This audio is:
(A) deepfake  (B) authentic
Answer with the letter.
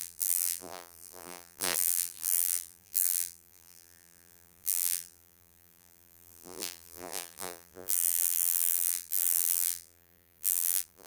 A